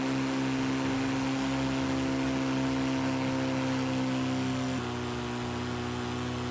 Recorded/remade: recorded